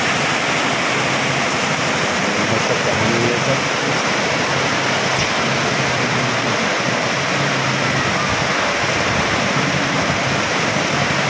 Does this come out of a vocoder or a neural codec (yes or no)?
no